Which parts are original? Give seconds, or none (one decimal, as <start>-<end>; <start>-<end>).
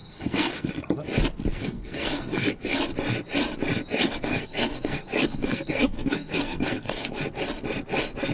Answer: 0.7-1.5; 2.8-4.0; 7.2-8.3